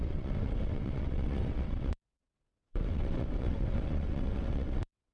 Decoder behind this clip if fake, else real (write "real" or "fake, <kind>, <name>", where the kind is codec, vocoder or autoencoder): fake, vocoder, WaveNeXt